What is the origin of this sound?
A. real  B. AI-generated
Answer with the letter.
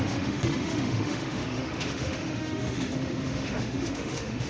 B